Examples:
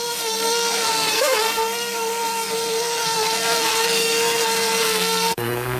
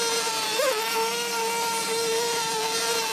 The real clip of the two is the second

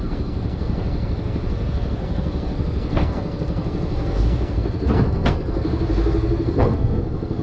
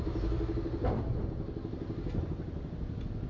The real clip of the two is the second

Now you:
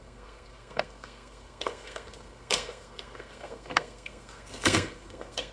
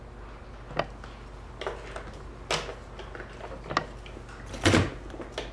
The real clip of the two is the second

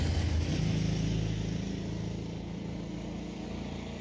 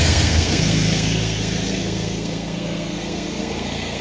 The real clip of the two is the first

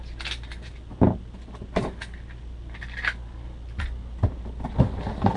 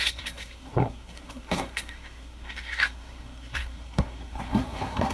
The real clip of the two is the first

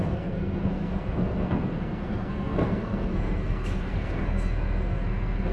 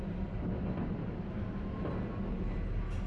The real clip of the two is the second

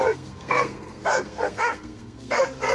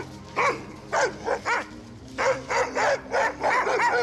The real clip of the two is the second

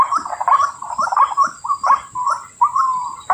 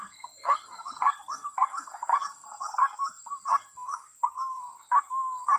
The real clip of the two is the first